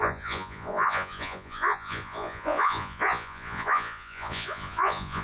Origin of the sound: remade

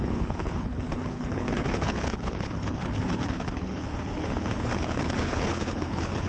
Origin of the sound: remade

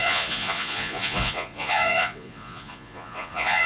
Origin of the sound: remade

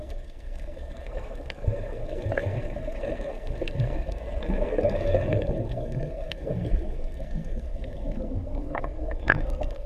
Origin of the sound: remade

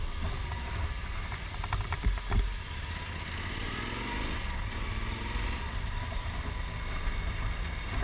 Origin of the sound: recorded